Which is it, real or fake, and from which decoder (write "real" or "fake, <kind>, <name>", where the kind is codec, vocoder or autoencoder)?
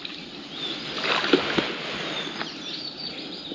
real